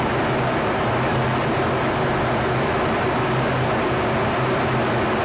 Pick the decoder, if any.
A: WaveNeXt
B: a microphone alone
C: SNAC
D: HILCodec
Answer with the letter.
B